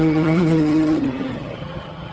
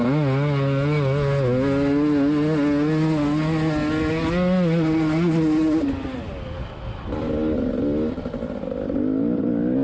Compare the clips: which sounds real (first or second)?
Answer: second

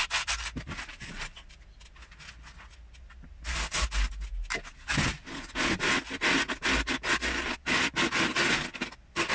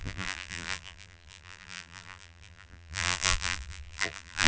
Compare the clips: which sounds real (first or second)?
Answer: first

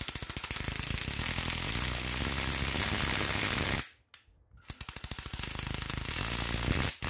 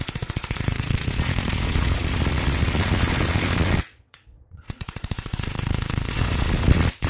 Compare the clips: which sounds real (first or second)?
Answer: first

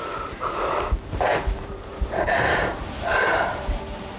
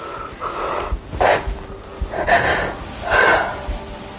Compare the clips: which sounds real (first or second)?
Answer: second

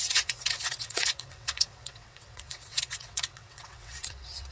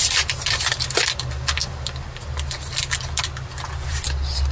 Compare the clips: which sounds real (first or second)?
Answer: second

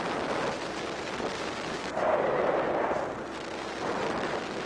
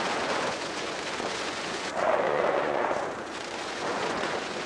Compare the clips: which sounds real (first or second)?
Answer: first